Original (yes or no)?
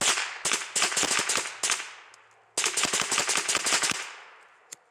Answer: yes